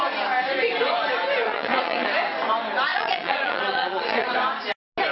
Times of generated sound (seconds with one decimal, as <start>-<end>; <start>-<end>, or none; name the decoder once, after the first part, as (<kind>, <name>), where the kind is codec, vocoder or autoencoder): 1.4-2.1 (vocoder, Vocos); 2.9-4.3

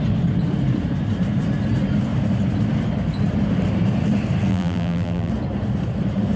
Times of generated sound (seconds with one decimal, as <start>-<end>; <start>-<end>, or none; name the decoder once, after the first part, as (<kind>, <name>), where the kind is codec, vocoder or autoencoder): 4.5-5.3 (vocoder, BigVGAN v2)